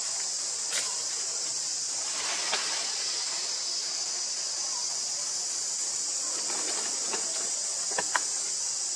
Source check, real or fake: real